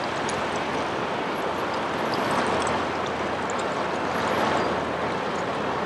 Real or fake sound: real